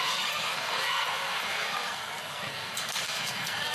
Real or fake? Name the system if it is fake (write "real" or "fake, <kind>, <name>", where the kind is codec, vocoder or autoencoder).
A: fake, codec, SNAC